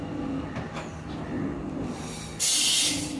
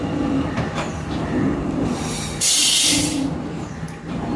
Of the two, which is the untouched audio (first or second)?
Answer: first